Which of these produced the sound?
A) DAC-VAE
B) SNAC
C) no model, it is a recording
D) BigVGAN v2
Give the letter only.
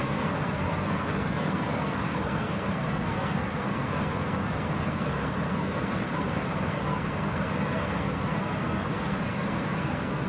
B